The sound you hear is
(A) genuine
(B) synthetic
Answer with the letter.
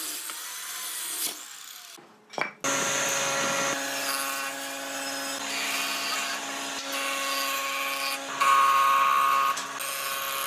A